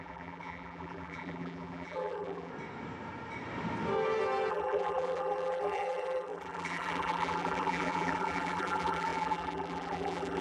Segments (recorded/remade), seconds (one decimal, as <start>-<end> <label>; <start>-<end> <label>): 0.0-2.5 remade; 2.5-4.5 recorded; 4.5-10.4 remade